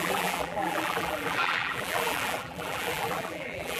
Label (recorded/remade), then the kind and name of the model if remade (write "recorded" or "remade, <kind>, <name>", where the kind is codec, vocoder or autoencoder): remade, vocoder, BigVGAN v2